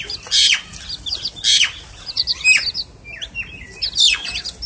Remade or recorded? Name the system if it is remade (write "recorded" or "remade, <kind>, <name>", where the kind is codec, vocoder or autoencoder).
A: recorded